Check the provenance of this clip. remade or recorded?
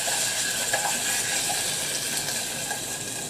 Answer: recorded